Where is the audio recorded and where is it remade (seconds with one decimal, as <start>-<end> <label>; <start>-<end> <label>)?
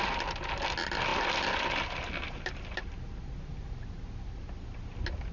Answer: 0.0-5.3 recorded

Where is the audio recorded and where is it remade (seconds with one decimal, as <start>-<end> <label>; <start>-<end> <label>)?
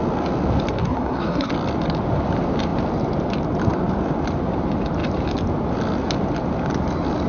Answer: 0.0-0.8 recorded; 0.8-1.5 remade; 1.5-7.3 recorded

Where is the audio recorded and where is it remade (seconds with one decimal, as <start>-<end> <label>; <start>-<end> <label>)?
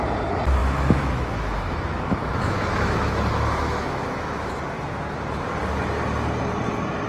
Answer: 0.0-0.6 recorded; 0.6-4.5 remade; 4.5-7.1 recorded